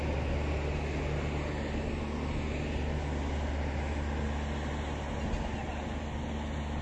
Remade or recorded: recorded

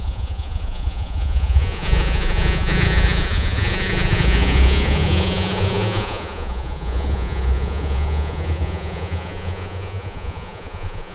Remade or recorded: remade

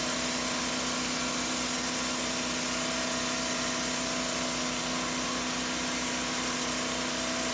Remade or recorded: recorded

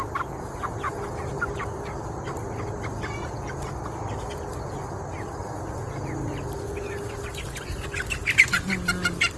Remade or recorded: recorded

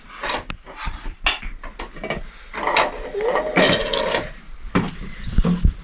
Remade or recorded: recorded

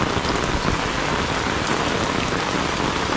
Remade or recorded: recorded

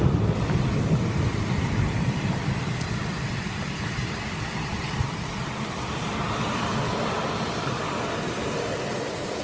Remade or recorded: remade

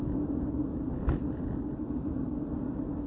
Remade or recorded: recorded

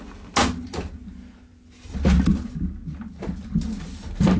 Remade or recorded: recorded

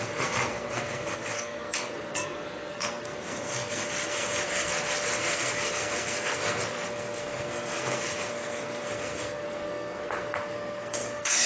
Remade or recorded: remade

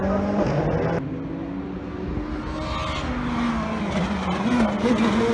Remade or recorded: recorded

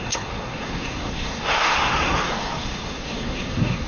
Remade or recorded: remade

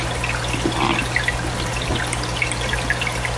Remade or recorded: recorded